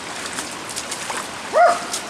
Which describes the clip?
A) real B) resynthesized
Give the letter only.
A